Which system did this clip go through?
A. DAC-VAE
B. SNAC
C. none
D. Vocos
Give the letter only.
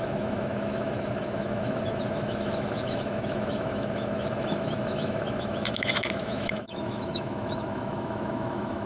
A